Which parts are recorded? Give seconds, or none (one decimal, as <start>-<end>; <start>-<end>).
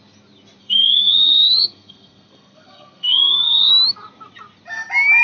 0.0-0.6; 3.7-5.2